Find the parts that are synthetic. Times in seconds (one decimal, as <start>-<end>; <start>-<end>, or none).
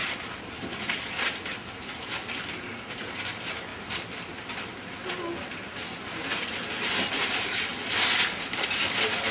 3.7-4.3